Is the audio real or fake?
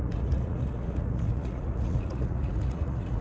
fake